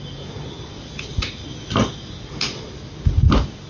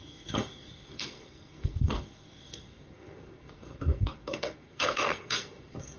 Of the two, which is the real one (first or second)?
first